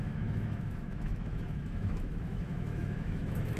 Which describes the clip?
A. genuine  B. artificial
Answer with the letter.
B